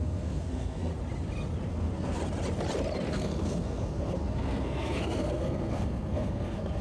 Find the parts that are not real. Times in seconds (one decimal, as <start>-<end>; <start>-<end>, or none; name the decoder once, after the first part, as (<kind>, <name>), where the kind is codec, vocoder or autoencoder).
0.0-0.9 (codec, SNAC); 1.7-2.2; 3.1-6.8